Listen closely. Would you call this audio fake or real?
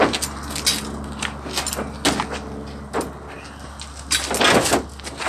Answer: real